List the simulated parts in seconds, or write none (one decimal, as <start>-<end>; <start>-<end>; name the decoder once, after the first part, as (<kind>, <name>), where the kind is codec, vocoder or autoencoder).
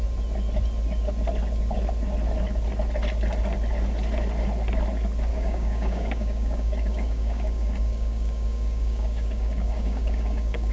5.3-10.7 (codec, DAC)